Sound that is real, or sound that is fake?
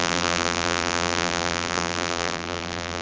fake